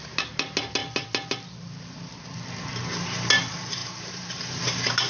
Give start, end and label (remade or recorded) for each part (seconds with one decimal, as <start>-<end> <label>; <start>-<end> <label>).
0.0-3.8 recorded; 3.8-4.3 remade; 4.3-5.1 recorded